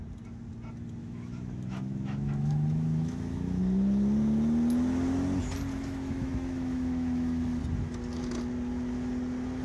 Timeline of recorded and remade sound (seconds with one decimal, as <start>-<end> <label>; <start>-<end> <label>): 0.0-1.0 recorded; 1.0-3.6 remade; 3.6-5.7 recorded; 5.7-7.6 remade; 7.6-9.6 recorded